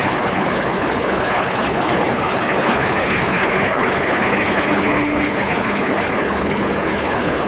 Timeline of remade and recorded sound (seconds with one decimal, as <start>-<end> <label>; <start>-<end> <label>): 0.0-7.5 remade